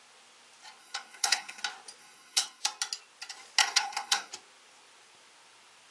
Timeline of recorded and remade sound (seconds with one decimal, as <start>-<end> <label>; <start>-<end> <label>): 0.0-0.8 recorded; 0.8-1.6 remade; 1.6-2.0 recorded; 2.0-2.6 remade; 2.6-3.6 recorded; 3.6-4.3 remade; 4.3-5.9 recorded